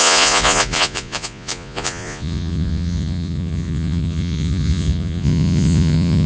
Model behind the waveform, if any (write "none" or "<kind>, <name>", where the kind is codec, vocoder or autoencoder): vocoder, Vocos